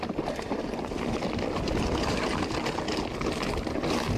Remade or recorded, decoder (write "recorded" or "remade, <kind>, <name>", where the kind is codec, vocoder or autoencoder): recorded